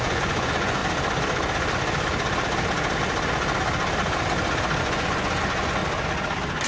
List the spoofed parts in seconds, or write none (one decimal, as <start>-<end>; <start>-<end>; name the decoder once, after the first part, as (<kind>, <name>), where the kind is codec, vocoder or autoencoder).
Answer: 0.0-0.8 (vocoder, Vocos); 4.8-5.8